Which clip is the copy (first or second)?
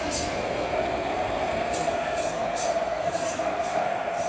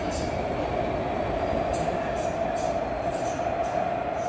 first